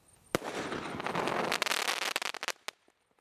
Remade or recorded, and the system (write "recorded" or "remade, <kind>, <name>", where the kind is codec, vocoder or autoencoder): recorded